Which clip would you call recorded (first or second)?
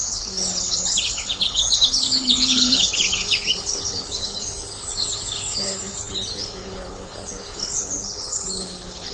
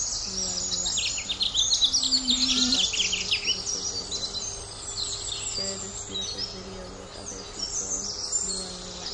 second